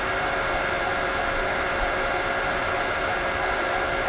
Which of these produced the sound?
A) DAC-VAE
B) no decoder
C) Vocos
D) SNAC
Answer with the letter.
B